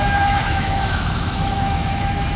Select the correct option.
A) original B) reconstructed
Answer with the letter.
B